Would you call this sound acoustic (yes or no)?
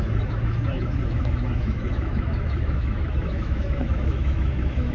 no